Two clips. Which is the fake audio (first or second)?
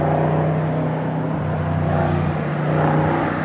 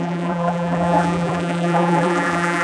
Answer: second